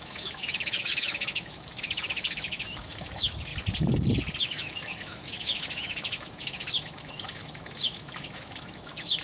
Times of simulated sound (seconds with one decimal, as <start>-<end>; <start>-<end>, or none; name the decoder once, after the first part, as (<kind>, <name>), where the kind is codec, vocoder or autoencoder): 0.0-3.5 (autoencoder, DAC-VAE); 4.4-9.2